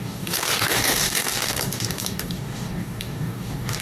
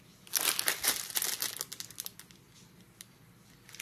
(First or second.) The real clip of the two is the second